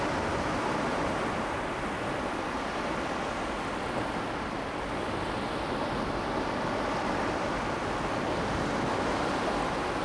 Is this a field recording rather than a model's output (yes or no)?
yes